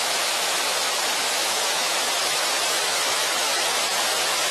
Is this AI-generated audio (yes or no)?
yes